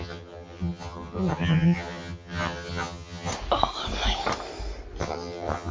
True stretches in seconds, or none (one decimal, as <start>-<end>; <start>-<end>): 3.3-5.0